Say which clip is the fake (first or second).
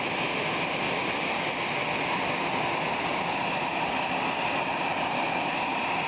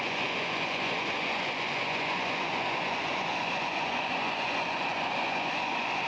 second